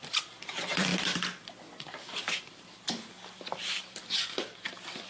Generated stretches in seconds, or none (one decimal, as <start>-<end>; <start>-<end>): 0.0-5.1